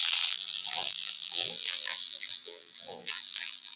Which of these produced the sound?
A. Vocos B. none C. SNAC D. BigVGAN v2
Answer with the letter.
D